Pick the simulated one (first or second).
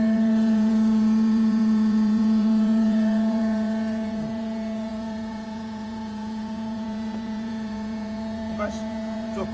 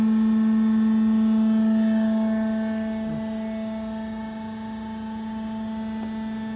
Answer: first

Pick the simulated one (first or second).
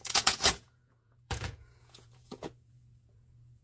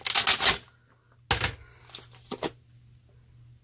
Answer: first